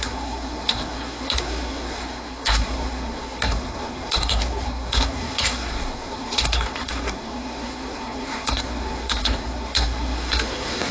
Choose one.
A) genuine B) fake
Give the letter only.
B